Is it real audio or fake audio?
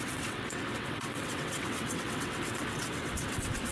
fake